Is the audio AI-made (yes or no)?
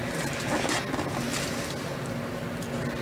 no